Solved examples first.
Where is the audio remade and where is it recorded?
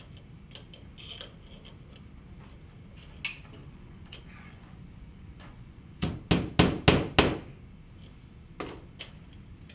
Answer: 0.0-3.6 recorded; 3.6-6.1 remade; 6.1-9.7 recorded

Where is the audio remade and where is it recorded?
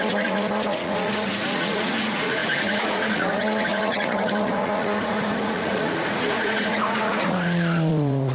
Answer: 0.0-8.3 remade